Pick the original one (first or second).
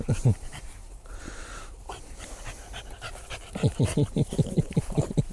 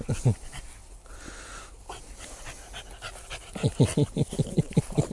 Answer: second